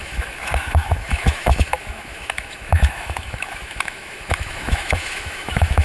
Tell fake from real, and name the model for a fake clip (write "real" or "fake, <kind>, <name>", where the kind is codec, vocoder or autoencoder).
fake, autoencoder, DAC-VAE